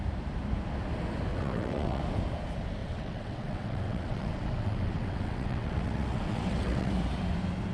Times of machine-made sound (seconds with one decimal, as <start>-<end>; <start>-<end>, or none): 1.3-2.0; 2.8-6.9